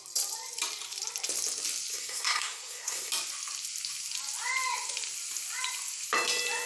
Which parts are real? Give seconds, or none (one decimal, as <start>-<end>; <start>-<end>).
0.0-1.9; 3.1-6.7